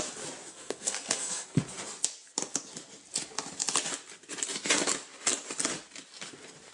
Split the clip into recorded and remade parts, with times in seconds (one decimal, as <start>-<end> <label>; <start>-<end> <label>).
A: 0.0-0.5 recorded; 0.5-1.6 remade; 1.6-6.7 recorded